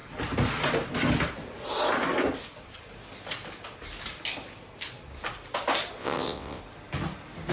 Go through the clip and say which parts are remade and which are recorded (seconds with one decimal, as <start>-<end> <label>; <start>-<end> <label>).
0.0-6.0 recorded; 6.0-6.6 remade; 6.6-7.5 recorded